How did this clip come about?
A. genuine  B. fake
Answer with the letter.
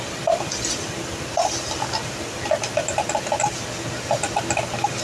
A